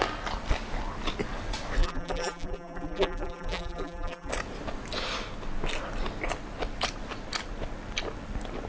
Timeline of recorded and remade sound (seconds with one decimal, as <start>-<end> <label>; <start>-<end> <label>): 0.0-1.8 recorded; 1.8-4.3 remade; 4.3-8.7 recorded